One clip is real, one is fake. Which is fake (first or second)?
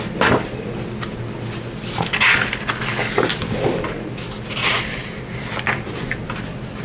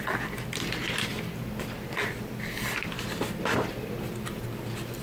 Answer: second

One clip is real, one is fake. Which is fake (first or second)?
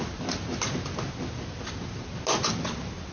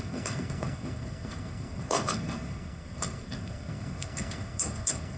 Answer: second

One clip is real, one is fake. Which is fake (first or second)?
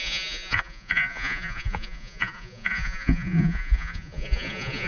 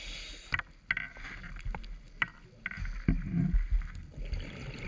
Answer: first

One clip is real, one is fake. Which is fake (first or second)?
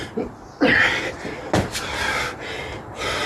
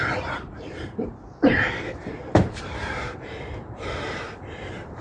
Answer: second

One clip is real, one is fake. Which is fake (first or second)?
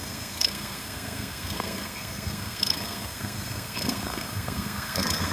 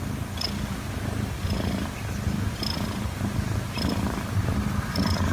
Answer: first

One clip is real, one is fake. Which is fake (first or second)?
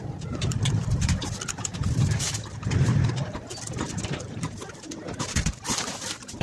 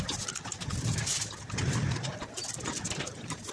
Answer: first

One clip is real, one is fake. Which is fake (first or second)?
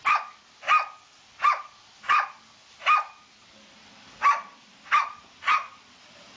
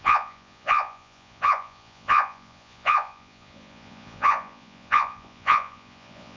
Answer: second